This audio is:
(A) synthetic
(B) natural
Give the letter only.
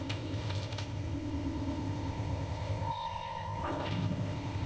A